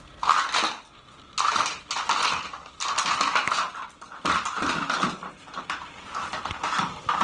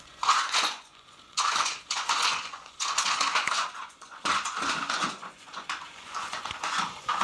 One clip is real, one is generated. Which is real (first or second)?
first